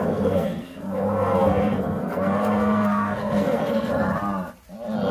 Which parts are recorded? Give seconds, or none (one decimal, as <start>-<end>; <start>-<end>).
3.9-5.1